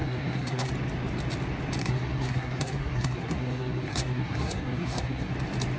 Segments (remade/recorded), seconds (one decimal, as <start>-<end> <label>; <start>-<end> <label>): 0.0-0.7 remade; 0.7-1.8 recorded; 1.8-5.3 remade; 5.3-5.8 recorded